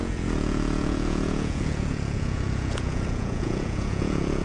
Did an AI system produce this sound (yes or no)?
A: yes